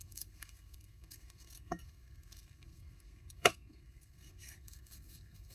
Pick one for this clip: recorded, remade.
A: remade